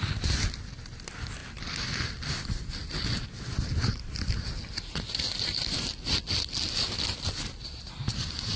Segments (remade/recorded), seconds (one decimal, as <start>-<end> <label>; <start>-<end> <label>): 0.0-1.4 recorded; 1.4-2.7 remade; 2.7-8.6 recorded